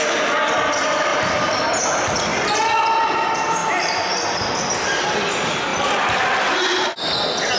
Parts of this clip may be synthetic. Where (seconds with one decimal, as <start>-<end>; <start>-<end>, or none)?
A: 1.1-1.7; 3.6-4.1

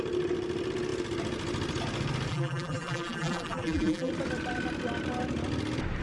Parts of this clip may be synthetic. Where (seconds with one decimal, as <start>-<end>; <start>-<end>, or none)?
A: 2.3-4.1

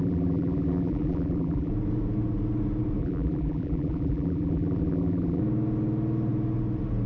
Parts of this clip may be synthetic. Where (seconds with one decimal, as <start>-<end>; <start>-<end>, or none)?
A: 0.0-1.7; 3.0-5.4